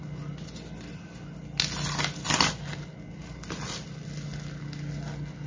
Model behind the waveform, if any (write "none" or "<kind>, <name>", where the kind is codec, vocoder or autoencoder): none